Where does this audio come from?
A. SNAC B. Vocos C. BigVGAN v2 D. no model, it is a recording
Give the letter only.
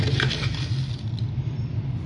D